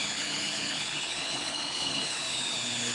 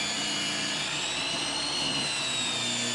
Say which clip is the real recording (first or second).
second